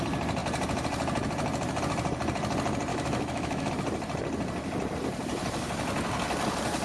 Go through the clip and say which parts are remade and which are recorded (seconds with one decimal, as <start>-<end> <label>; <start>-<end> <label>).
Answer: 0.0-2.9 recorded; 2.9-3.7 remade; 3.7-6.8 recorded